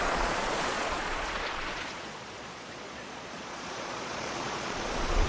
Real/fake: fake